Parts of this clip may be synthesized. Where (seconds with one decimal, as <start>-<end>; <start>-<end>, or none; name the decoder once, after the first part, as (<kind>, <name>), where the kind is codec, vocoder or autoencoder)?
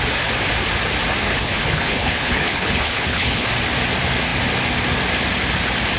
1.3-3.5 (codec, HILCodec)